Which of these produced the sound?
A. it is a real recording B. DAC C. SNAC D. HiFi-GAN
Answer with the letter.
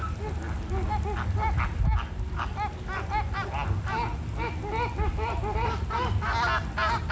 A